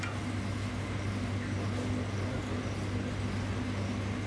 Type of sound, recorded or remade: recorded